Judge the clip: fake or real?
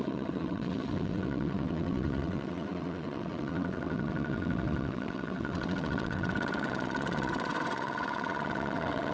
fake